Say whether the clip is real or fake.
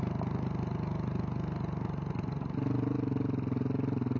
real